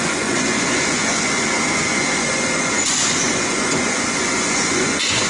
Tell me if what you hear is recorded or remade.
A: remade